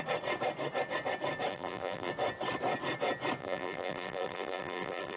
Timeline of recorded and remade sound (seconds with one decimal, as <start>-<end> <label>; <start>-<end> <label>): 0.0-1.5 recorded; 1.5-2.1 remade; 2.1-3.4 recorded; 3.4-5.2 remade